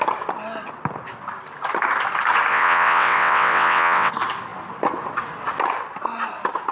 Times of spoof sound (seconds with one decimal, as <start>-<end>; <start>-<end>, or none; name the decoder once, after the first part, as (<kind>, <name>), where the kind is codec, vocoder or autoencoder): 2.5-4.1 (vocoder, WaveNeXt)